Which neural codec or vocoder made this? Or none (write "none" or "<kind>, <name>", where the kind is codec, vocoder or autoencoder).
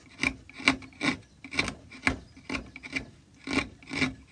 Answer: none